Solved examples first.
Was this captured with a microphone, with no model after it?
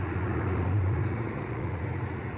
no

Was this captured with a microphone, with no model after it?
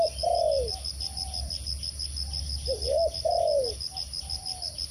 yes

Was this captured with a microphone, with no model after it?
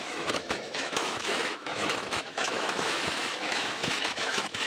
no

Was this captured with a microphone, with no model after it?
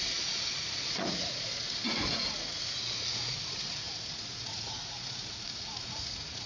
no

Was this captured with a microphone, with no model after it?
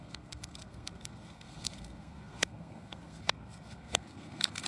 no